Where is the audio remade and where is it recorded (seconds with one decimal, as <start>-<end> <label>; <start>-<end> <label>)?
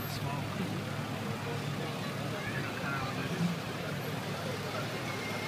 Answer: 0.0-3.2 recorded; 3.2-5.5 remade